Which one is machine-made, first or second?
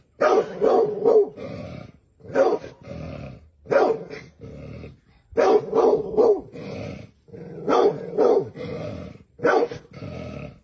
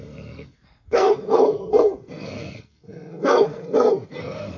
second